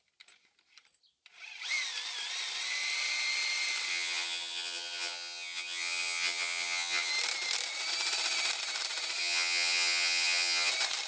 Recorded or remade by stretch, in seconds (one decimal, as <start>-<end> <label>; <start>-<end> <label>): 0.0-3.9 recorded; 3.9-7.1 remade; 7.1-9.2 recorded; 9.2-10.7 remade; 10.7-11.1 recorded